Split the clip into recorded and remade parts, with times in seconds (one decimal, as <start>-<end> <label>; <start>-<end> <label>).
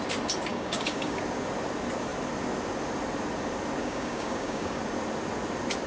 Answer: 0.0-0.5 recorded; 0.5-1.2 remade; 1.2-3.8 recorded; 3.8-4.8 remade; 4.8-5.9 recorded